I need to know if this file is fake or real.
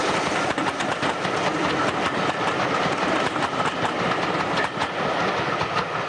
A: real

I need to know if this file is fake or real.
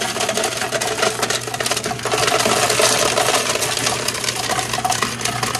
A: real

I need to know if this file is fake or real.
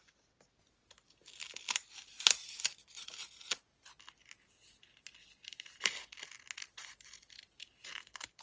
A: real